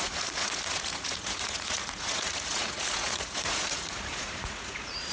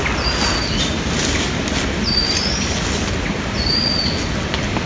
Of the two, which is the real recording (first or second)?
second